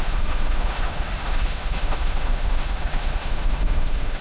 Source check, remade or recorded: remade